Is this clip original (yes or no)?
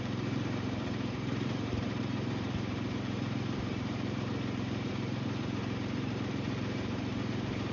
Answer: no